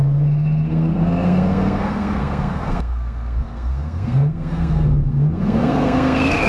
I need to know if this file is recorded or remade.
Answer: remade